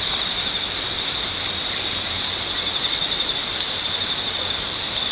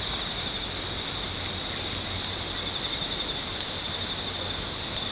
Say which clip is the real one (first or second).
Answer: second